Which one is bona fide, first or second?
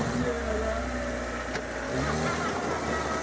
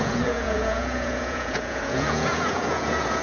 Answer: first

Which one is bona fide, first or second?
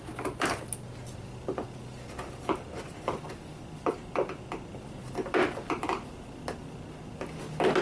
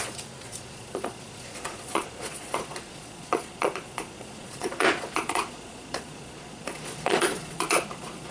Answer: first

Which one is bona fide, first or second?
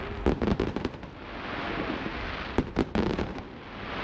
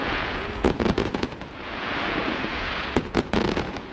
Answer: first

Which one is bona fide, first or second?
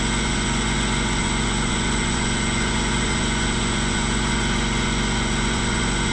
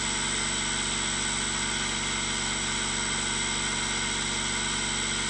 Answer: second